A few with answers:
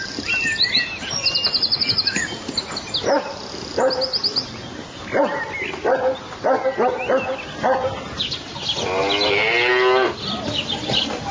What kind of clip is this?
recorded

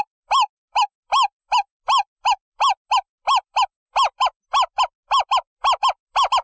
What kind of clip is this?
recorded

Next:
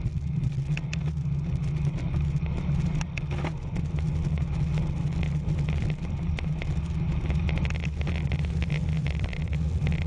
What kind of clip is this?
recorded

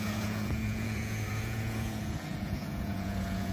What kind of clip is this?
remade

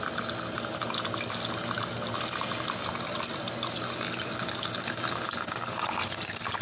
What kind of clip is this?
recorded